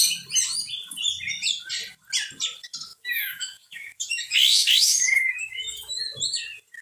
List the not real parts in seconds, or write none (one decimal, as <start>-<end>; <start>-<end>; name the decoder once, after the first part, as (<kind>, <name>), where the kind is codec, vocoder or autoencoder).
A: 2.9-6.0 (autoencoder, DAC-VAE)